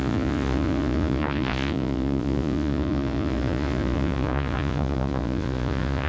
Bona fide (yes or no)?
no